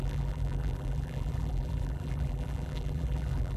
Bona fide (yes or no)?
no